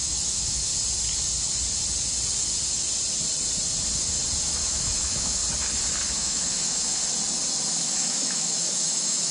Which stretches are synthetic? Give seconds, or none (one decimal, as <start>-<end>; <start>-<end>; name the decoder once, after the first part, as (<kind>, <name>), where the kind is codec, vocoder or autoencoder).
0.0-0.7 (autoencoder, DAC-VAE); 4.4-5.4; 6.1-7.0; 7.8-9.3